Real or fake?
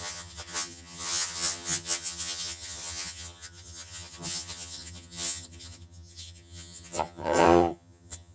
fake